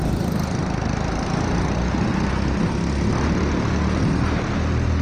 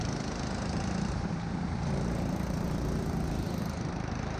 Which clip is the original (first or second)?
first